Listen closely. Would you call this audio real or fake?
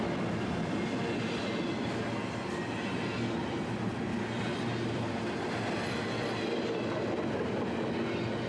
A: real